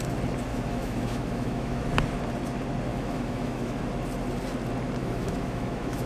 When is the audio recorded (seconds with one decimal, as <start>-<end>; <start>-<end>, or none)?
0.0-0.5; 1.8-2.9; 3.8-5.0